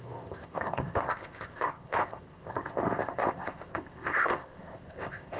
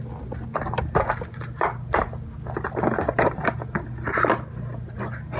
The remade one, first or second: first